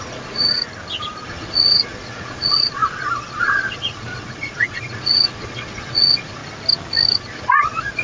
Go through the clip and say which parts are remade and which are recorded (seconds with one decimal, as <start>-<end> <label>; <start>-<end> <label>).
0.0-0.6 remade; 0.6-1.3 recorded; 1.3-6.4 remade; 6.4-7.2 recorded; 7.2-8.0 remade